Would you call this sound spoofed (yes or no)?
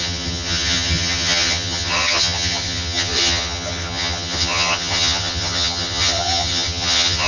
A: yes